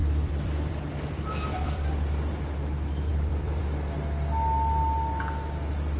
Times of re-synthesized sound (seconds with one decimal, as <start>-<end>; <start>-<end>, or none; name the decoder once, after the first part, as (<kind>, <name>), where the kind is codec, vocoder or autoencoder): 0.0-2.3 (vocoder, BigVGAN v2); 3.1-3.6